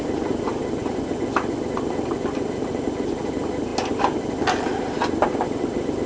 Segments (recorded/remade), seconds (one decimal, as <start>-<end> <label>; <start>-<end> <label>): 0.0-6.1 recorded